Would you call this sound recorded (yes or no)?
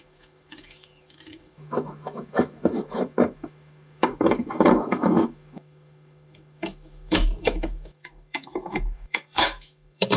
no